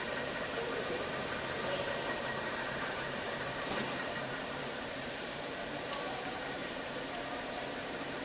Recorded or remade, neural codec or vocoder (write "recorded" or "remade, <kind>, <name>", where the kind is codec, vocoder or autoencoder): remade, vocoder, BigVGAN v2